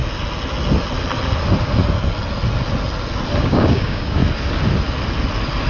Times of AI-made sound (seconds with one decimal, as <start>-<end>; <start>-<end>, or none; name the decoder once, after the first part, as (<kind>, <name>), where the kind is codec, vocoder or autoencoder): 3.4-4.2 (codec, DAC)

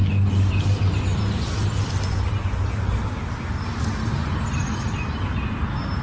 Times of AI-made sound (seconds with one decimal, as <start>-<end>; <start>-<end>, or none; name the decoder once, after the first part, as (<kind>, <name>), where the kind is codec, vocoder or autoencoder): none

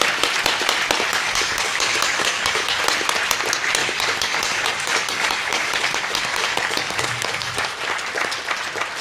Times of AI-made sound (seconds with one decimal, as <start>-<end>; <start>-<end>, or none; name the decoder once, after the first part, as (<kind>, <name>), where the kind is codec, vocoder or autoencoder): 1.1-2.8 (codec, DAC); 3.8-7.7